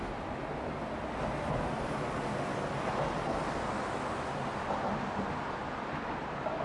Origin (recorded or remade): recorded